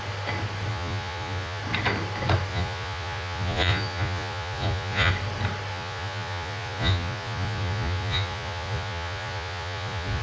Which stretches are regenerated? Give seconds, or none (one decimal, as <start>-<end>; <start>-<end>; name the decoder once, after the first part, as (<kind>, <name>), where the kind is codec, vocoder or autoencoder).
0.7-1.6 (vocoder, Vocos); 2.5-5.1; 5.7-10.2